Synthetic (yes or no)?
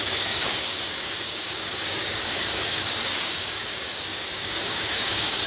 yes